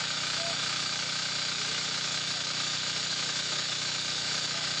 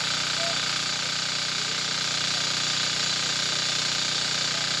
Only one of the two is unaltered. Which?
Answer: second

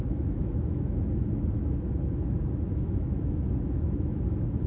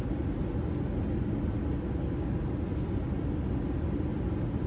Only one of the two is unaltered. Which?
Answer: second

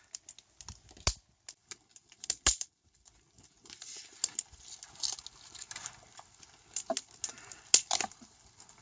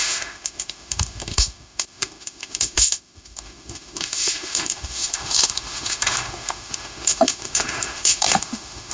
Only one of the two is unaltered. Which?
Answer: first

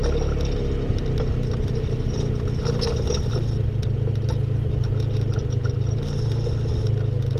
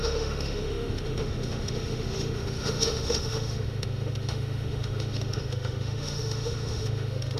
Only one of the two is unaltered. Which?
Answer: first